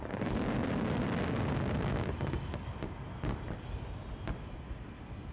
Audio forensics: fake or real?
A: real